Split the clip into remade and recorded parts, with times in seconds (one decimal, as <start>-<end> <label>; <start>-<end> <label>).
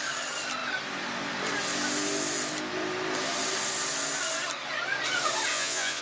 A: 0.0-5.5 recorded; 5.5-6.0 remade